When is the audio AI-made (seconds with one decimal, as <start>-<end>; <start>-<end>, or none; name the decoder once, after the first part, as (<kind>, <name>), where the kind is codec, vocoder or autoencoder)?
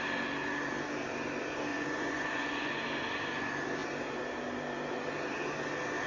1.7-2.8 (vocoder, Vocos)